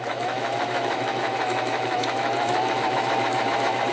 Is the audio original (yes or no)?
no